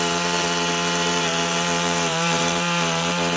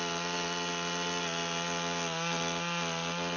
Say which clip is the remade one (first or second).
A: first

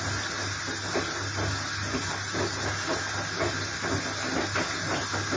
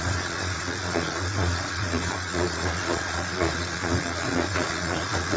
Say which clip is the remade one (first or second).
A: second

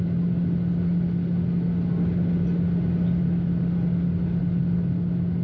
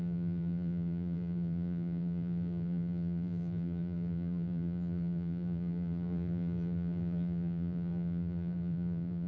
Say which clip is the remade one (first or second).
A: second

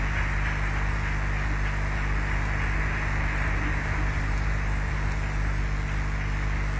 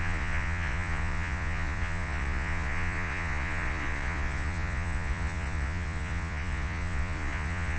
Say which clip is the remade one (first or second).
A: second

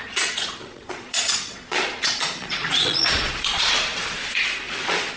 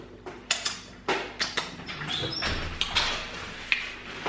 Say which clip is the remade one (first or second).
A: first